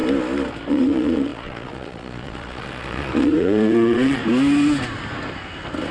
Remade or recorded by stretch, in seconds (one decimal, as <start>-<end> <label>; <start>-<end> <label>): 0.0-0.7 recorded; 0.7-4.2 remade; 4.2-5.9 recorded